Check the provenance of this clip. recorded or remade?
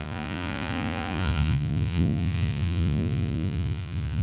remade